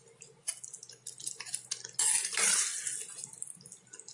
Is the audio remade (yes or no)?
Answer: no